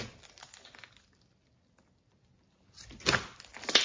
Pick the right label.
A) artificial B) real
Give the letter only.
B